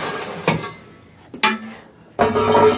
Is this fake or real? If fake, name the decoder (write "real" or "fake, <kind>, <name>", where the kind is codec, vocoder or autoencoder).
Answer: real